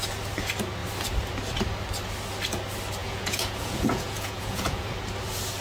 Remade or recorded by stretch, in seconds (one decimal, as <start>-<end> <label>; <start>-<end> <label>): 0.0-3.0 recorded; 3.0-4.9 remade; 4.9-5.6 recorded